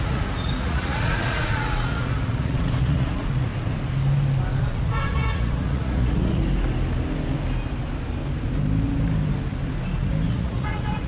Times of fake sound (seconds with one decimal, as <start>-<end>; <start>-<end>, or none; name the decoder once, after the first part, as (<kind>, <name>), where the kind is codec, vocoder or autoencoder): 0.0-3.5 (vocoder, Vocos); 4.6-6.4; 10.3-11.1